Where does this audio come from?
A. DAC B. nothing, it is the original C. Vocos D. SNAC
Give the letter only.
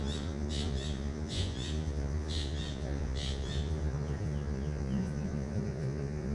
C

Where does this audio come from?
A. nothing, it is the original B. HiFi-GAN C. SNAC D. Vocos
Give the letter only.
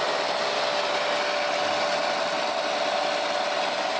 A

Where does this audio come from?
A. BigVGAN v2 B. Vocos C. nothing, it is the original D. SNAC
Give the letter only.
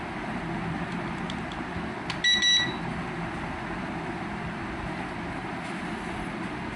C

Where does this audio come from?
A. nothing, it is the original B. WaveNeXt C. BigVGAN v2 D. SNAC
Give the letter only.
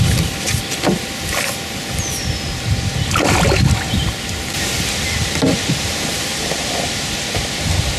A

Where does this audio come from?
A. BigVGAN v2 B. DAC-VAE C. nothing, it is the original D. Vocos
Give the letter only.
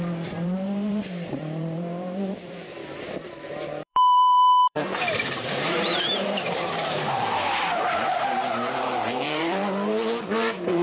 A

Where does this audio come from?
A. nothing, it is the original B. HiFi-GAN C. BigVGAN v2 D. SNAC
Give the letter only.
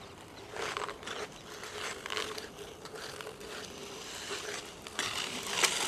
A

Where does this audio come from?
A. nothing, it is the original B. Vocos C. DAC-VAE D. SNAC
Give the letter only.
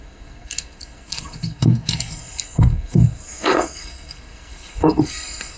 D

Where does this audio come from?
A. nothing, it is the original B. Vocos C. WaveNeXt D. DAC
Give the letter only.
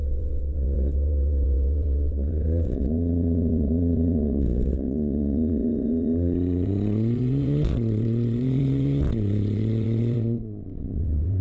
C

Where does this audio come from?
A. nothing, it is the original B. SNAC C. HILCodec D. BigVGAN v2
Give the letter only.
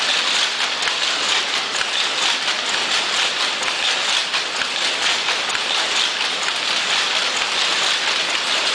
D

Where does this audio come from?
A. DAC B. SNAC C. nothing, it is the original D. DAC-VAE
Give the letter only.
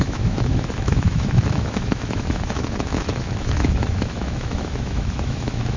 D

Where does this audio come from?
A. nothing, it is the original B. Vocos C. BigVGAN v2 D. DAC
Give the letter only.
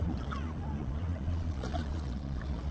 B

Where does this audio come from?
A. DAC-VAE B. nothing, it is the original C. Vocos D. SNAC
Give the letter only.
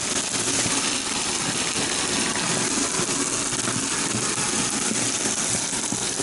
B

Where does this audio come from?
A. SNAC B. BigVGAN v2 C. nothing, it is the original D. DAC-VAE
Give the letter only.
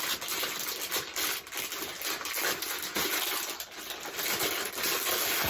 C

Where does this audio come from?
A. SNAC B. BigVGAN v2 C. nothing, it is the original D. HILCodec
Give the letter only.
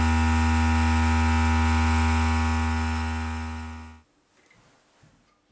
C